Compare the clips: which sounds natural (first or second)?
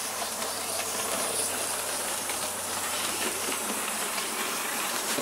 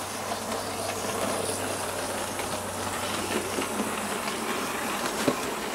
second